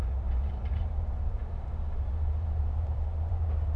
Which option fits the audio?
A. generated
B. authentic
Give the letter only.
A